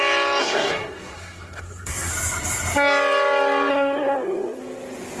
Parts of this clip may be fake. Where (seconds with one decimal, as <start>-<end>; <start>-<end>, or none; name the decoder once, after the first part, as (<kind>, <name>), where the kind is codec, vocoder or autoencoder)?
0.4-2.1 (codec, SNAC); 3.7-4.6